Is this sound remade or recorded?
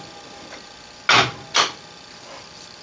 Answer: recorded